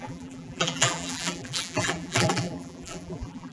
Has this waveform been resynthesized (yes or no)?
yes